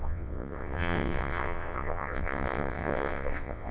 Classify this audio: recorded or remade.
remade